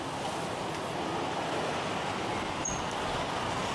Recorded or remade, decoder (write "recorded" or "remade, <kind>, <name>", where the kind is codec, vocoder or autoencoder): recorded